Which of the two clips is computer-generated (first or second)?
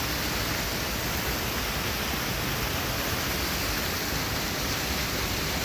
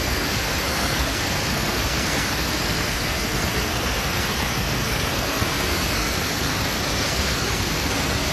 second